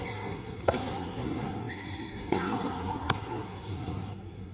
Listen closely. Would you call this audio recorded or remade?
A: remade